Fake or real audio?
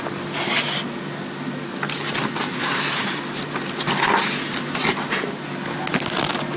real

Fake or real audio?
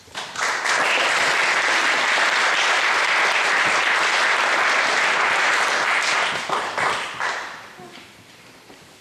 real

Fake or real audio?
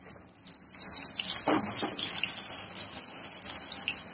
real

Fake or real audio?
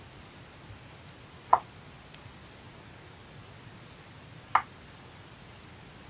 real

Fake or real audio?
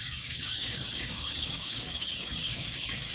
fake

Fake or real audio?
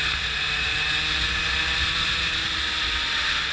real